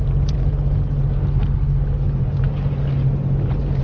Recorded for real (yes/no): yes